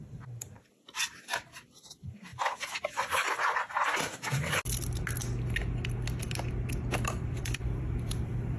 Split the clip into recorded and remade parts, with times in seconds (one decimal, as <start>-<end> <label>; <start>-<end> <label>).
0.0-2.3 remade; 2.3-7.4 recorded; 7.4-8.6 remade